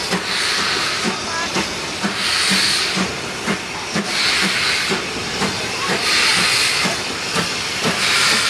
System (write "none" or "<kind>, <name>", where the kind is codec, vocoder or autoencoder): none